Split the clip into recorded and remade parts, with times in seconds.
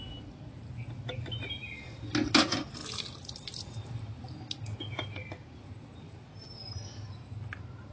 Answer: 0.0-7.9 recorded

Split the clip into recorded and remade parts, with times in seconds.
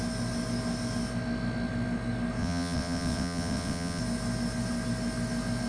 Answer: 0.0-2.4 recorded; 2.4-4.0 remade; 4.0-5.7 recorded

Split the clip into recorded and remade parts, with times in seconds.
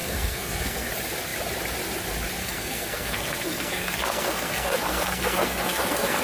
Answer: 0.0-0.9 remade; 0.9-2.4 recorded; 2.4-6.2 remade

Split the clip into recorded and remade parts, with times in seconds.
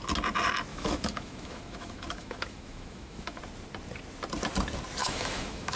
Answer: 0.0-0.7 recorded; 0.7-3.4 remade; 3.4-5.0 recorded; 5.0-5.8 remade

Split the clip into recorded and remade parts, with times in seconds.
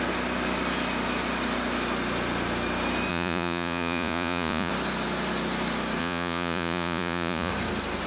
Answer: 0.0-3.1 recorded; 3.1-4.7 remade; 4.7-6.0 recorded; 6.0-7.5 remade; 7.5-8.1 recorded